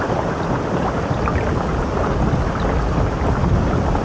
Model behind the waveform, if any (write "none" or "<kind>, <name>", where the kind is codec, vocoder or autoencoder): none